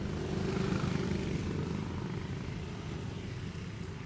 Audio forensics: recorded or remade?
recorded